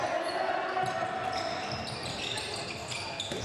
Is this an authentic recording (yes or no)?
yes